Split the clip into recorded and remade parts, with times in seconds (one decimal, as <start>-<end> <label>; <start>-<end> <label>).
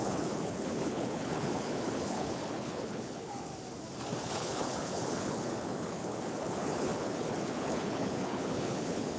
0.0-3.5 remade; 3.5-4.2 recorded; 4.2-9.2 remade